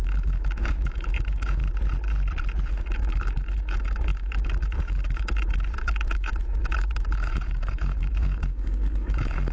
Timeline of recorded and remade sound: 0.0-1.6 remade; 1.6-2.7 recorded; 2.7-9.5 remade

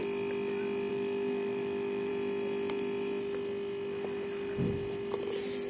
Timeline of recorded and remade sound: 0.0-0.9 recorded; 0.9-2.1 remade; 2.1-5.7 recorded

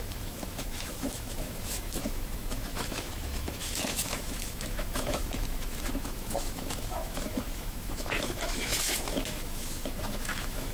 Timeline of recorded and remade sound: 0.0-10.7 remade

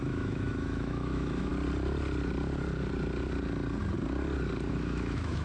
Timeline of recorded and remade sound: 0.0-1.5 remade; 1.5-4.7 recorded; 4.7-5.4 remade